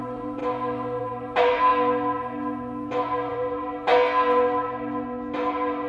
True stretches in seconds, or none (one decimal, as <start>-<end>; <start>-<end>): 0.4-1.0; 1.7-3.3; 3.9-5.9